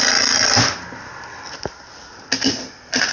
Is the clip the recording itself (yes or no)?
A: yes